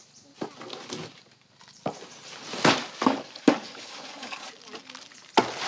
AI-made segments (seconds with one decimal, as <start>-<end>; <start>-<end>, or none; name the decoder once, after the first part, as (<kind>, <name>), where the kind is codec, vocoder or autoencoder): 2.8-4.4 (codec, DAC)